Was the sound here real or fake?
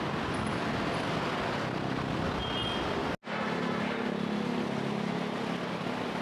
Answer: real